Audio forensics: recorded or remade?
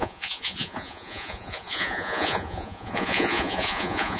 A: remade